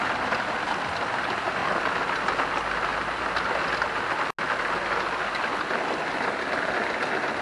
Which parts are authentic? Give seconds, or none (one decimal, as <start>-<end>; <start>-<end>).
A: 0.0-7.4